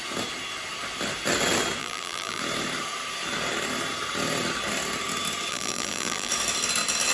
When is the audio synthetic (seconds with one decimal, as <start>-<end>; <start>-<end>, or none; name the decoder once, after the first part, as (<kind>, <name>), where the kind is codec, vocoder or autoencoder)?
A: 1.8-2.4 (vocoder, BigVGAN v2); 5.5-6.3